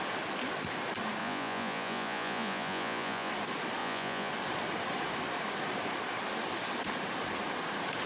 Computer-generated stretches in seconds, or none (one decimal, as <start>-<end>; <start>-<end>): 1.2-3.3; 3.8-4.3